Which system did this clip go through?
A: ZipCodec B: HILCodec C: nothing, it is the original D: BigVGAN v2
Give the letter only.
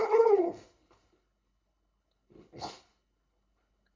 B